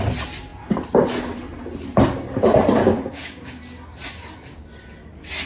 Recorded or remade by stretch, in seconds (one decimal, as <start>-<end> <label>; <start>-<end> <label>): 0.0-2.8 recorded; 2.8-3.6 remade; 3.6-5.5 recorded